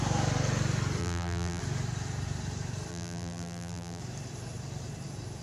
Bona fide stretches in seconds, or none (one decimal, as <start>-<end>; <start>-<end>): 0.0-1.0; 1.6-2.9; 4.0-5.4